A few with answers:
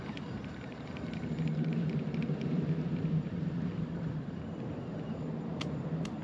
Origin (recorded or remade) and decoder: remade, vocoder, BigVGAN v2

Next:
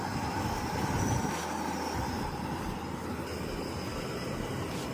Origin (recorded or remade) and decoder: recorded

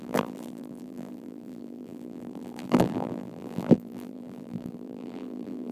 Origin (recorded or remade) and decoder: remade, vocoder, BigVGAN v2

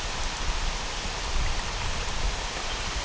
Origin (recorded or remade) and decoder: remade, vocoder, BigVGAN v2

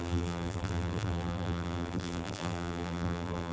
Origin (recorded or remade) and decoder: remade, vocoder, BigVGAN v2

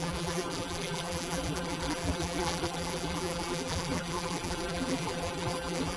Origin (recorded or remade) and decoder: remade, vocoder, BigVGAN v2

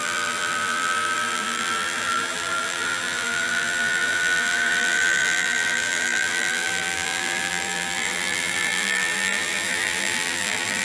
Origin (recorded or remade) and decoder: remade, vocoder, BigVGAN v2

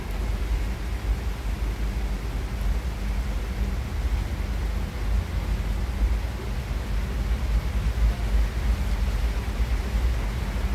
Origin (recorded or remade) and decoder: recorded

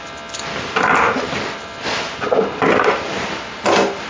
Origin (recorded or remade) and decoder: recorded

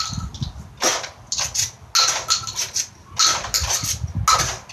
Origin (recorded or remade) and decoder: recorded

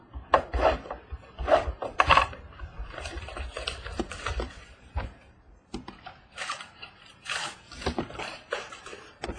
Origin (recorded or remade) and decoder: remade, vocoder, BigVGAN v2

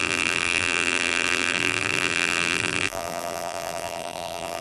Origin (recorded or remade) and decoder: remade, vocoder, BigVGAN v2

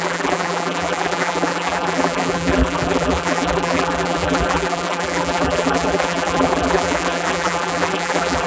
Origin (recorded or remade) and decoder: remade, vocoder, BigVGAN v2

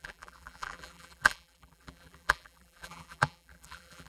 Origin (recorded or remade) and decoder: remade, vocoder, BigVGAN v2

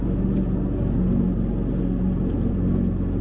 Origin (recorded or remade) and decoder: recorded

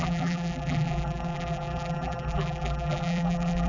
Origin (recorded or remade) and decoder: remade, vocoder, BigVGAN v2